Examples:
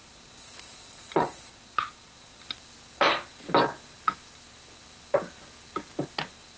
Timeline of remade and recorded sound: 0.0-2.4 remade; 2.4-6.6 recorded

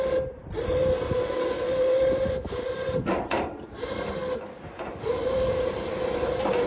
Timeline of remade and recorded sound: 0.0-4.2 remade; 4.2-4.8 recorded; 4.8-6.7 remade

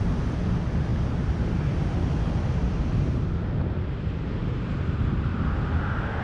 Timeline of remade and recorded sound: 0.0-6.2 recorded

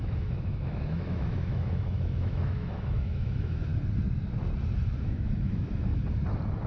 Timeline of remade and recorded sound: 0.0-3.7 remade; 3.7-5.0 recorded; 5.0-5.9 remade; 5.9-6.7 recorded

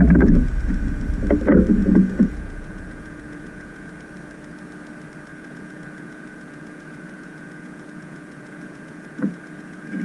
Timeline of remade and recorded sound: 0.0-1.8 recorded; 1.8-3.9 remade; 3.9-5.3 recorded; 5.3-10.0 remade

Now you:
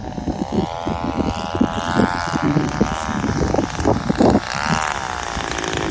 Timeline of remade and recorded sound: 0.0-5.9 recorded